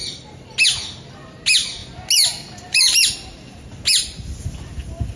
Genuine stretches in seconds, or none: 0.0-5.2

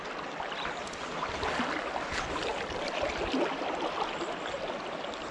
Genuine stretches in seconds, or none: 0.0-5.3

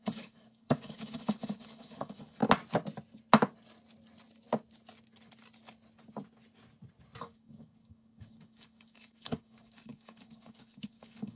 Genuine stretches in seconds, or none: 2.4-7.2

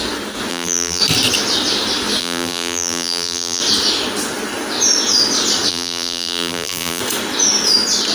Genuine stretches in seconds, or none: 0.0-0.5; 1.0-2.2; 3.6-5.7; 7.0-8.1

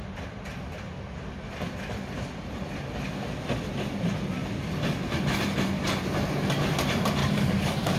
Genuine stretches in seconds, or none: 0.0-7.2